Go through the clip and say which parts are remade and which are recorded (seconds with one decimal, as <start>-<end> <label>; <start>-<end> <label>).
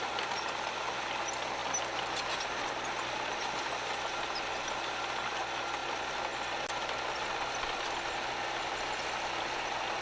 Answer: 0.0-10.0 recorded